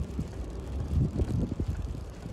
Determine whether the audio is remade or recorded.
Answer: remade